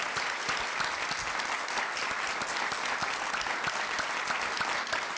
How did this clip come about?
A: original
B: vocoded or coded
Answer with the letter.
A